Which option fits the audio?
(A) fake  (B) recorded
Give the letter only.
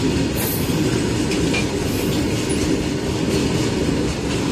B